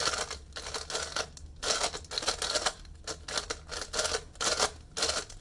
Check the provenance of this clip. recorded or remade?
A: recorded